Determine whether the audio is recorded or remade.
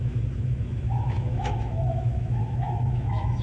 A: remade